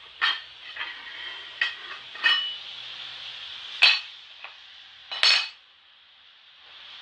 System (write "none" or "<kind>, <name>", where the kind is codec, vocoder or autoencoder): none